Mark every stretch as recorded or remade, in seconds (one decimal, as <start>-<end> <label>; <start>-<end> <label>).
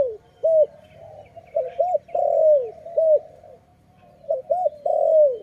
0.0-3.7 recorded; 3.7-4.4 remade; 4.4-5.4 recorded